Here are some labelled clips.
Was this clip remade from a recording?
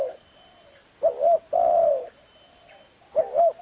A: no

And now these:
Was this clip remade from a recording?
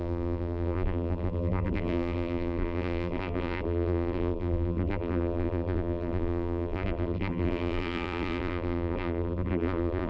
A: yes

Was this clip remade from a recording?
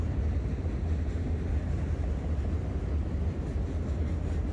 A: no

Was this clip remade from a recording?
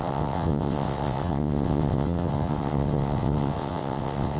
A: yes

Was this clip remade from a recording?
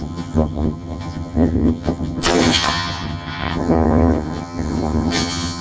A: yes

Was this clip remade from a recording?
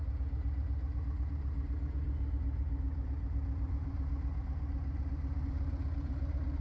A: yes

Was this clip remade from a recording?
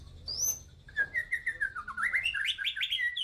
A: no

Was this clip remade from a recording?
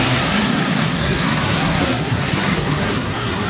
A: yes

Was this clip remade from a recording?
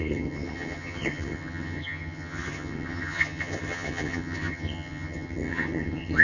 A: yes